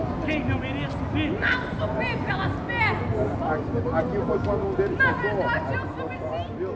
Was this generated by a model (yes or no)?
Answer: no